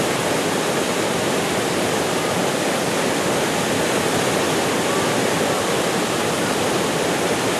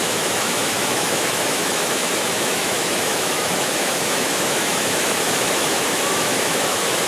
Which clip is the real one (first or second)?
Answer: first